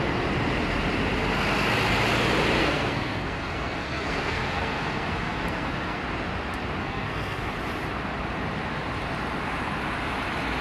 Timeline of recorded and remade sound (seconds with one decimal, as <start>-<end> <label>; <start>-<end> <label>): 0.0-2.6 recorded; 2.6-6.0 remade; 6.0-6.8 recorded; 6.8-7.5 remade; 7.5-10.6 recorded